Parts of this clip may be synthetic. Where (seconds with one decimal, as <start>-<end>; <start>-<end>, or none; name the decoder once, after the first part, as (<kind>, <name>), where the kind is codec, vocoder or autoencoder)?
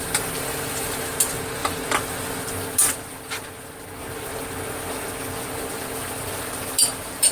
none